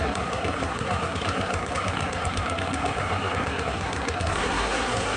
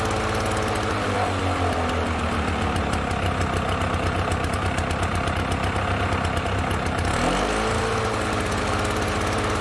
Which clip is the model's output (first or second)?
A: first